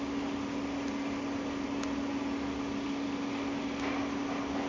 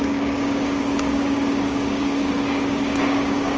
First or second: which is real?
first